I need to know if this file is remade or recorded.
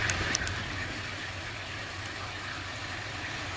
recorded